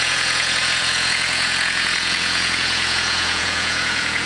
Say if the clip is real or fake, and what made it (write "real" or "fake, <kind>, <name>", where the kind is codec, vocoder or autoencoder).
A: fake, vocoder, Vocos